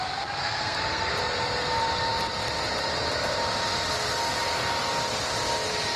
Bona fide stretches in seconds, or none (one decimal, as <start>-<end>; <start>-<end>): 0.0-0.4; 1.1-6.0